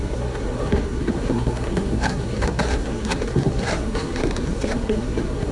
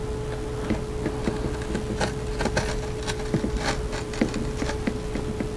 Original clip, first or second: second